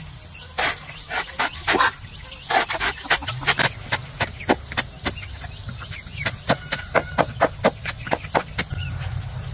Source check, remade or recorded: recorded